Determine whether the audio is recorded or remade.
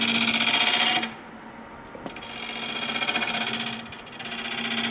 recorded